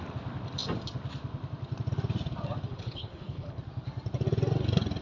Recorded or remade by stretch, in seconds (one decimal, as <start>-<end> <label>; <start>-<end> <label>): 0.0-2.7 recorded; 2.7-3.6 remade; 3.6-5.0 recorded